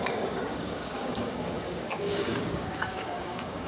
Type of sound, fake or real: fake